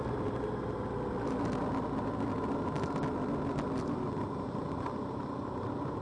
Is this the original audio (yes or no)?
yes